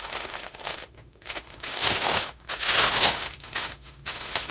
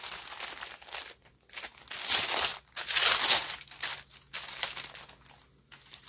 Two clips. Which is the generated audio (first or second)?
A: first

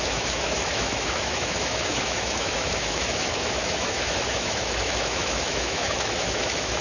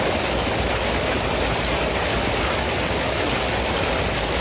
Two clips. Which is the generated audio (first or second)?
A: first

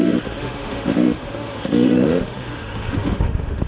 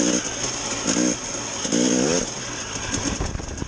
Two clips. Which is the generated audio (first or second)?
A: first